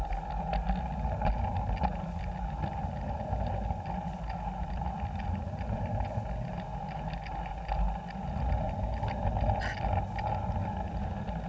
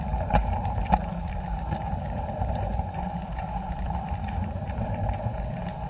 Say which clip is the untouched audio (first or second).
first